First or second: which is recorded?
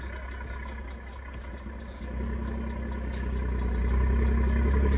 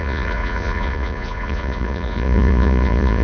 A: first